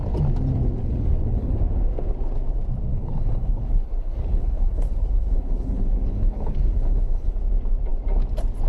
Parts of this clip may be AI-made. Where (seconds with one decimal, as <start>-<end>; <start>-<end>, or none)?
0.8-1.6; 2.9-7.4